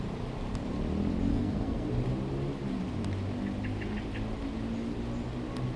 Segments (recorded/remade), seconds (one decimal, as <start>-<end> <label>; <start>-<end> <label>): 0.0-1.3 recorded; 1.3-1.9 remade; 1.9-5.8 recorded